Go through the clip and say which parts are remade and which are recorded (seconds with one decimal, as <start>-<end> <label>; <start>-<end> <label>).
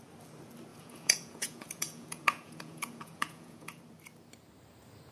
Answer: 0.0-0.7 recorded; 0.7-3.8 remade; 3.8-5.1 recorded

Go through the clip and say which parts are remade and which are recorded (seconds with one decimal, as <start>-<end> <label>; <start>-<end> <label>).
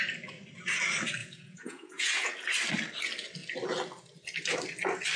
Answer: 0.0-1.2 recorded; 1.2-2.3 remade; 2.3-5.2 recorded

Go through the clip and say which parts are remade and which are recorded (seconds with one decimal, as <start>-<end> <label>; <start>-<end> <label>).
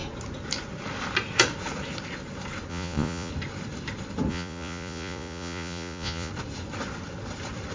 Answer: 0.0-2.7 recorded; 2.7-3.3 remade; 3.3-4.3 recorded; 4.3-6.3 remade; 6.3-7.7 recorded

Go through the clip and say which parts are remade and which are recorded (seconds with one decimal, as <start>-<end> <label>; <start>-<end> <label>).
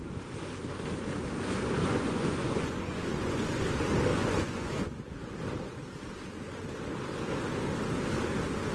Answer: 0.0-1.8 recorded; 1.8-3.6 remade; 3.6-4.1 recorded; 4.1-5.0 remade; 5.0-8.7 recorded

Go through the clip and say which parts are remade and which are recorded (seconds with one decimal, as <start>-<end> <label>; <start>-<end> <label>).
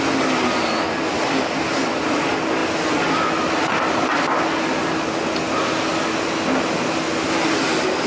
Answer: 0.0-8.1 recorded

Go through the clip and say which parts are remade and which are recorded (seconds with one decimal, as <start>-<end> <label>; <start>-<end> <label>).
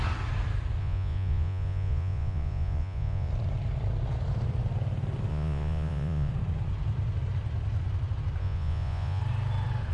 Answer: 0.0-0.8 recorded; 0.8-3.3 remade; 3.3-5.3 recorded; 5.3-6.3 remade; 6.3-8.4 recorded; 8.4-9.2 remade; 9.2-9.9 recorded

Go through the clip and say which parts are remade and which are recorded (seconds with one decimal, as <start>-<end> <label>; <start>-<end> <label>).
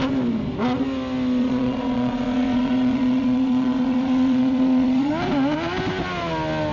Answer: 0.0-1.4 recorded; 1.4-5.1 remade; 5.1-6.7 recorded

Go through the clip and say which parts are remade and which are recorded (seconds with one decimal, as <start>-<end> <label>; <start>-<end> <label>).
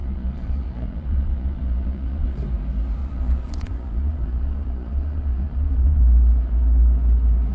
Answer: 0.0-2.4 remade; 2.4-3.0 recorded; 3.0-6.0 remade; 6.0-7.5 recorded